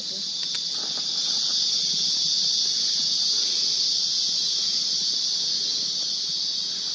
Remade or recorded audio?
recorded